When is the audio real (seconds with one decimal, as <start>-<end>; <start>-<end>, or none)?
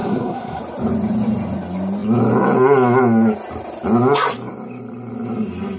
0.6-5.8